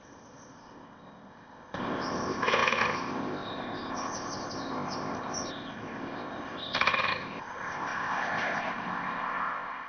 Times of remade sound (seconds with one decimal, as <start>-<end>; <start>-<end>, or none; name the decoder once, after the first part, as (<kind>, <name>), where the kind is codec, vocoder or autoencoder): 0.0-9.9 (codec, ZipCodec)